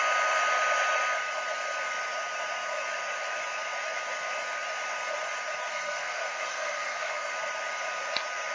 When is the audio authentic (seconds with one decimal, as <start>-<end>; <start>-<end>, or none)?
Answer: 0.0-5.7; 7.3-8.5